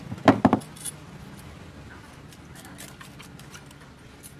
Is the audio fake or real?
real